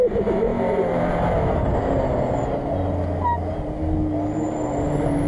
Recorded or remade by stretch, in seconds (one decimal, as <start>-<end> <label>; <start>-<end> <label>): 0.0-5.3 recorded